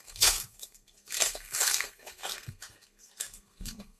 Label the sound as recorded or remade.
remade